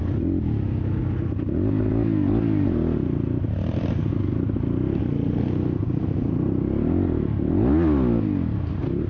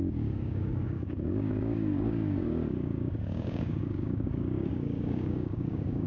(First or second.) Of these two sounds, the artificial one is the second